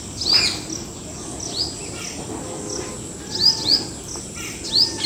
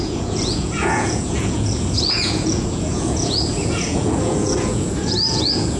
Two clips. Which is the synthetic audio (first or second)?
second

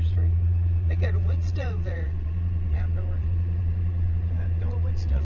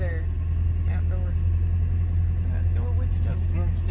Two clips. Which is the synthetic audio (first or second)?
first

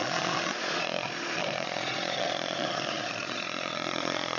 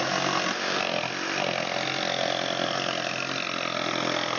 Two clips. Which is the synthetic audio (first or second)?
first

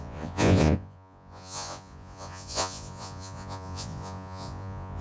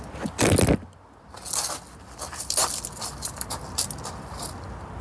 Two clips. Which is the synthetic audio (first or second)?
first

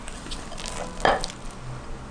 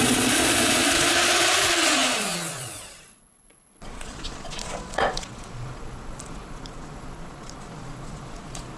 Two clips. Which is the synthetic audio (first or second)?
second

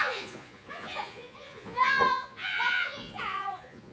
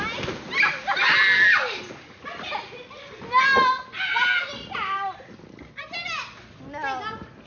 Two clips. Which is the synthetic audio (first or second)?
first